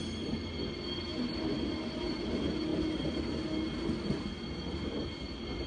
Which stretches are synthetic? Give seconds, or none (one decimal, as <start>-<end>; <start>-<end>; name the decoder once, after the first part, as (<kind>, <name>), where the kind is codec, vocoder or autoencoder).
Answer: none